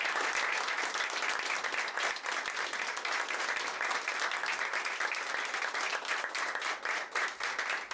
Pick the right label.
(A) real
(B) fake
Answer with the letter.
A